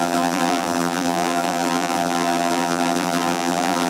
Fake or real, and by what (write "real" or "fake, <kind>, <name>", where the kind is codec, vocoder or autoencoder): fake, vocoder, BigVGAN v2